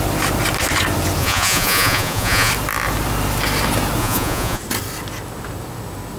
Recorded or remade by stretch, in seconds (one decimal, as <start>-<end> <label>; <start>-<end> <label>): 0.0-1.2 recorded; 1.2-2.5 remade; 2.5-4.0 recorded; 4.0-4.6 remade; 4.6-6.2 recorded